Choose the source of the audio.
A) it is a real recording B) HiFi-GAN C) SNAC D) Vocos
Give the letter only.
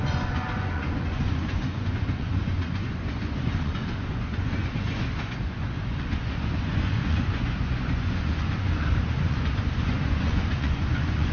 D